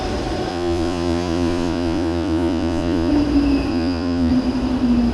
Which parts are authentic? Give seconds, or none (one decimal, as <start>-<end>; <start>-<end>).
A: 0.0-0.5; 3.1-3.7; 4.3-5.1